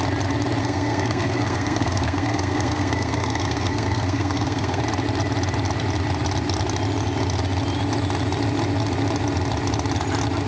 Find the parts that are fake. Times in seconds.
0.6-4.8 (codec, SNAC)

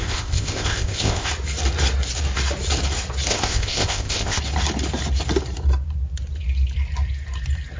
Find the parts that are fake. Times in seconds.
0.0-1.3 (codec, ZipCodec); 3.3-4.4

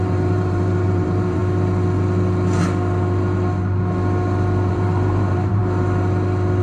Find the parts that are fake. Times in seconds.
0.0-1.4 (vocoder, BigVGAN v2); 4.7-5.6

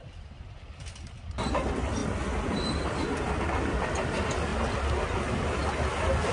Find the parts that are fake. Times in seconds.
none